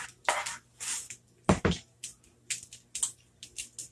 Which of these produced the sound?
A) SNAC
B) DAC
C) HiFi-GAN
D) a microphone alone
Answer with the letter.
D